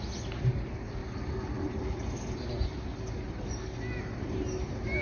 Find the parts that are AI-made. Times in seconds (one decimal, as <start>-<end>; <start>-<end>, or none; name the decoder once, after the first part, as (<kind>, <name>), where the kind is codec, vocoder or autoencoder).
none